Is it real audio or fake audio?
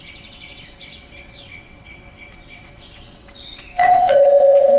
fake